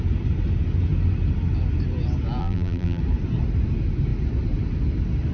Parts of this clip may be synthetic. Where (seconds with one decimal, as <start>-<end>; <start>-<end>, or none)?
2.4-3.0